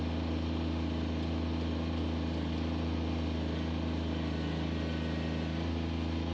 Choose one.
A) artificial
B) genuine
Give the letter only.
B